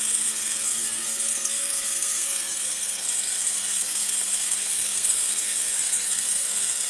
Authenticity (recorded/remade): remade